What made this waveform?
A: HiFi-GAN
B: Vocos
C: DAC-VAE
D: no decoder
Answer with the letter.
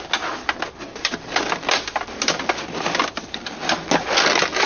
D